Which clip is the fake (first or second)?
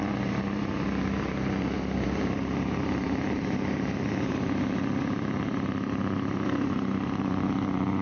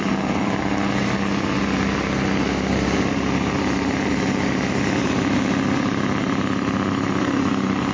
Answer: first